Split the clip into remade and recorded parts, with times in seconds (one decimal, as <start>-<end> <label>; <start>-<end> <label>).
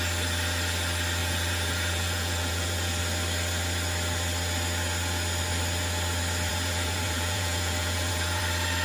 0.0-1.2 recorded; 1.2-3.0 remade; 3.0-6.5 recorded; 6.5-8.4 remade; 8.4-8.8 recorded